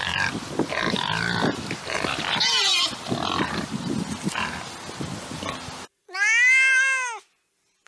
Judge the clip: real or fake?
real